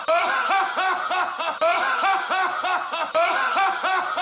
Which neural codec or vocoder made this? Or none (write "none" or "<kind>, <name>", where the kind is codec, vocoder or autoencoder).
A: none